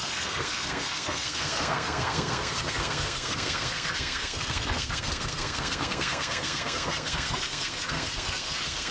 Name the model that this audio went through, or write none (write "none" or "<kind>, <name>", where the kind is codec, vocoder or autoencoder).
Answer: codec, SNAC